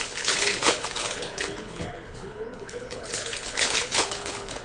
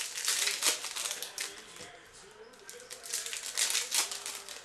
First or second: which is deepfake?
first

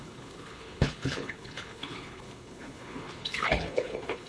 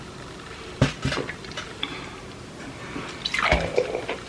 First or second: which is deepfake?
first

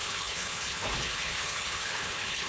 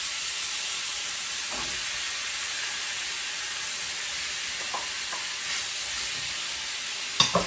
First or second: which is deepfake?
first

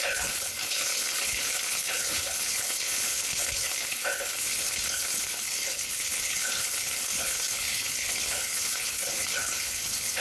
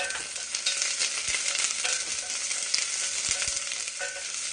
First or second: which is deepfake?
first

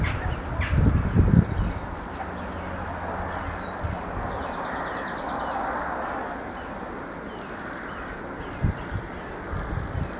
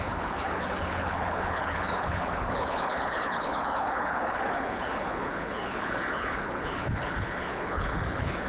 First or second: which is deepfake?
second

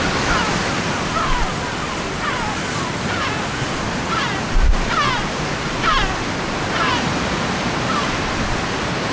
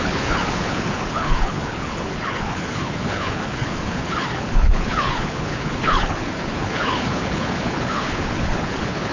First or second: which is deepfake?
second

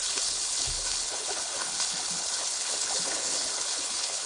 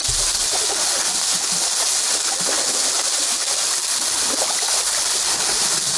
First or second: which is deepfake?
first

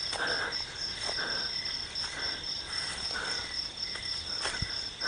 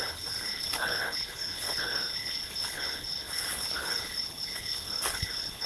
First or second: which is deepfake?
second